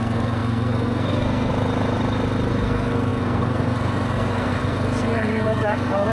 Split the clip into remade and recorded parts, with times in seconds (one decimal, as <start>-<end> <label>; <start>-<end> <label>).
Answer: 0.0-1.5 remade; 1.5-2.5 recorded; 2.5-6.1 remade